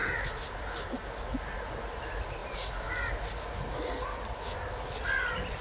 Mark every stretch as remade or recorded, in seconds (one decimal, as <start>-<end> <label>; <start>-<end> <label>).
0.0-5.6 recorded